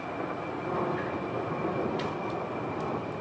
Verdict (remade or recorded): recorded